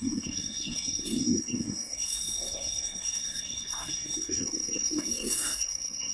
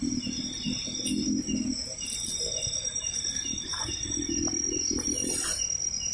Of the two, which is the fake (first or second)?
first